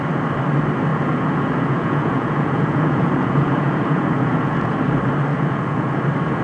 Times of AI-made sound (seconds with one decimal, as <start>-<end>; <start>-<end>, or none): 0.9-4.7; 5.3-6.0